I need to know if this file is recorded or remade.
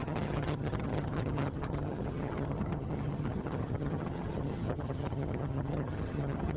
remade